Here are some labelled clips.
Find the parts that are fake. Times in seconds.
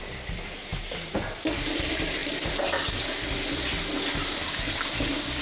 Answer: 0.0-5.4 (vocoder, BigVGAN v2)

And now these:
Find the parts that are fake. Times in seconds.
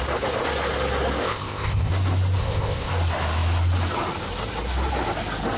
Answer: 1.2-1.9 (codec, ZipCodec); 2.4-2.9